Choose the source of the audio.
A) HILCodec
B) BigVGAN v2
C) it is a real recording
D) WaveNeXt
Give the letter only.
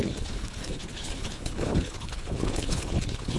A